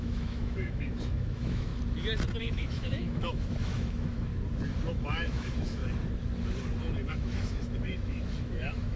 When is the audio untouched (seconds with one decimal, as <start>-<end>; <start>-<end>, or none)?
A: 1.7-2.4; 4.3-4.9; 5.8-7.1